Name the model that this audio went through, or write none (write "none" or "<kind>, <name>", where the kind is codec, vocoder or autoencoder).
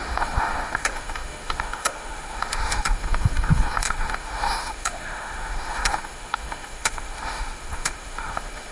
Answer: autoencoder, DAC-VAE